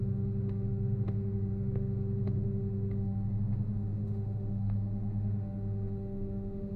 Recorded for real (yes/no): no